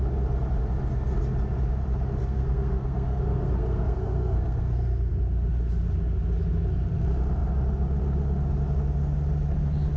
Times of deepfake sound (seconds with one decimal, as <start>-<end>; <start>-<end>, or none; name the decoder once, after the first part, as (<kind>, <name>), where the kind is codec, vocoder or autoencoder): 2.2-5.1 (codec, SNAC)